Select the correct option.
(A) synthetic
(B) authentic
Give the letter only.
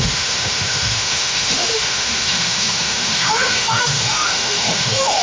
A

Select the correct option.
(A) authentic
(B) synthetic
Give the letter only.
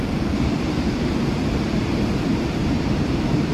B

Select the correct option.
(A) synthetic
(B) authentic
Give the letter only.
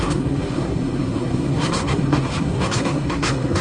A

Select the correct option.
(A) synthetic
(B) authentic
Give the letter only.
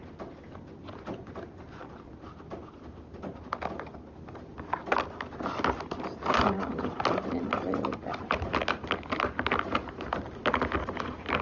B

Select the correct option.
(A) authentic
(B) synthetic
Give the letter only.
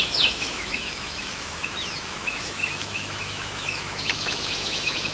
B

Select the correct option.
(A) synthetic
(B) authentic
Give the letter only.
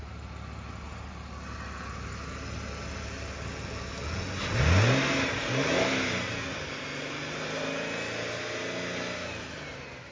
B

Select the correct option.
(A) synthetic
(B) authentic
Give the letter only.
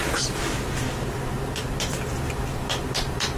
B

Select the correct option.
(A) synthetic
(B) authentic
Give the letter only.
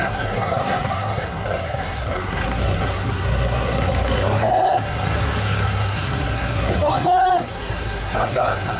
A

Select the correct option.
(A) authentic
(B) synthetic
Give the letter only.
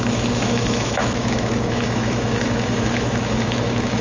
B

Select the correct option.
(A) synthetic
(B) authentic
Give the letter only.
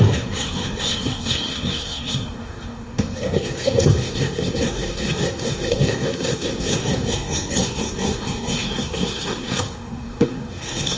A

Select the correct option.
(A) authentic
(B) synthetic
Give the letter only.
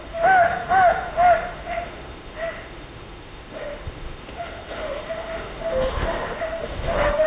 B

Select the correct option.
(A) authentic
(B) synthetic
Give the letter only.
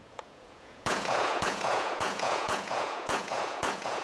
B